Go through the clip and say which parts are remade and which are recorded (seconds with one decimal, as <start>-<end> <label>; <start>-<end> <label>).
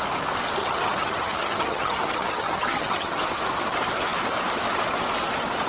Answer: 0.0-0.6 recorded; 0.6-3.2 remade; 3.2-5.7 recorded